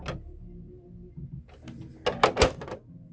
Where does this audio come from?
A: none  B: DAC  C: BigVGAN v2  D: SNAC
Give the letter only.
A